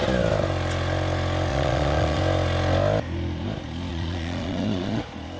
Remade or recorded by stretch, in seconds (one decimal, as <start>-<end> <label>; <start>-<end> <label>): 0.0-1.5 recorded; 1.5-2.2 remade; 2.2-3.9 recorded; 3.9-5.0 remade; 5.0-5.4 recorded